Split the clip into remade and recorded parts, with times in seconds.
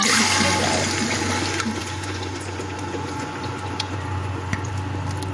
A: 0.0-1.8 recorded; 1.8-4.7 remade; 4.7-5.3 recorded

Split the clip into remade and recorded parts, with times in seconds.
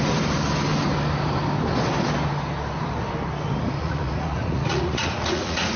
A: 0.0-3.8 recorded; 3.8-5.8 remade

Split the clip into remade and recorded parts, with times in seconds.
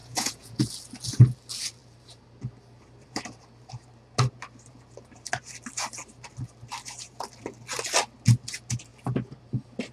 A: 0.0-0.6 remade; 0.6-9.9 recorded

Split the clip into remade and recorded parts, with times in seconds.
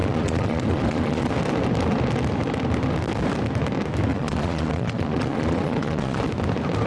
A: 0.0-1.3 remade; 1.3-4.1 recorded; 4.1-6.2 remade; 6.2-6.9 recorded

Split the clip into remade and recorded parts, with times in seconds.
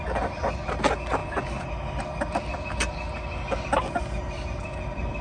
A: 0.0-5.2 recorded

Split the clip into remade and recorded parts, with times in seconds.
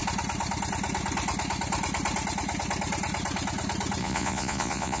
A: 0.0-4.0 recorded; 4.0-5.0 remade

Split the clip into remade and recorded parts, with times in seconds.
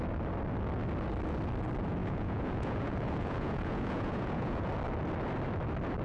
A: 0.0-2.0 recorded; 2.0-4.7 remade; 4.7-6.0 recorded